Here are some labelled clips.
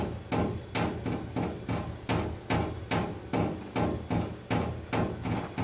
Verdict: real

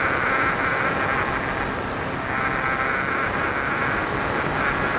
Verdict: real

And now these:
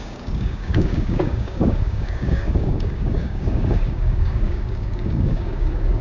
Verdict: fake